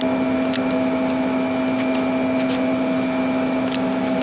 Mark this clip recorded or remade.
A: recorded